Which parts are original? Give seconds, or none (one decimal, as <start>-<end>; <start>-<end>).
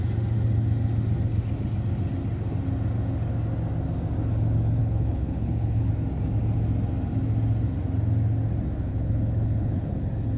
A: 0.0-4.8; 5.9-8.9; 10.0-10.4